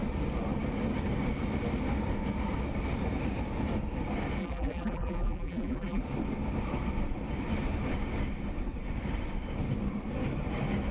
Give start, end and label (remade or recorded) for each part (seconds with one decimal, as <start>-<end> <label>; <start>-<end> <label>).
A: 0.0-4.4 recorded; 4.4-6.0 remade; 6.0-10.9 recorded